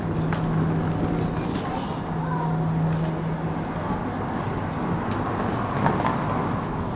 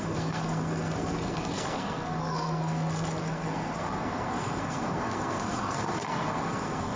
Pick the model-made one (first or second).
second